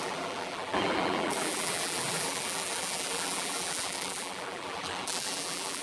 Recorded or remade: remade